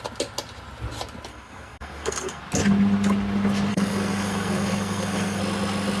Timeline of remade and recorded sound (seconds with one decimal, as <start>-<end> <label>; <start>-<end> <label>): 0.0-1.3 recorded; 1.3-2.4 remade; 2.4-3.7 recorded; 3.7-5.4 remade; 5.4-6.0 recorded